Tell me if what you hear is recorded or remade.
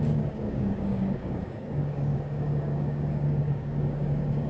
remade